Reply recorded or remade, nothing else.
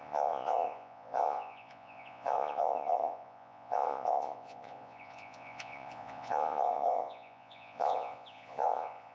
remade